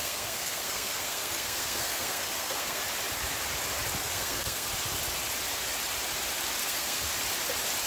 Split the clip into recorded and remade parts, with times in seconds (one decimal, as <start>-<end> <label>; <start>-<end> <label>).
0.0-2.8 remade; 2.8-4.0 recorded; 4.0-4.7 remade; 4.7-6.6 recorded; 6.6-7.1 remade; 7.1-7.9 recorded